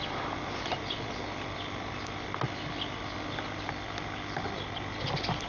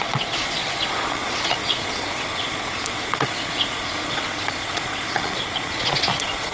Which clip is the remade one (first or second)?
second